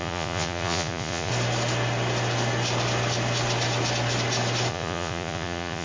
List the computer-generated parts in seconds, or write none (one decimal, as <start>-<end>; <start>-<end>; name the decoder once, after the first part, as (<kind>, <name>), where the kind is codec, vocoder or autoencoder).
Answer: 0.0-1.3 (vocoder, Vocos); 4.7-5.8